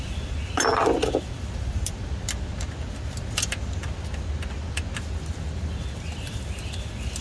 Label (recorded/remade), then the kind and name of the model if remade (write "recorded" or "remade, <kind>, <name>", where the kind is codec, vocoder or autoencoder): recorded